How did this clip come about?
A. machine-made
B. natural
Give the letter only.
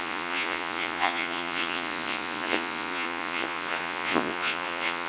A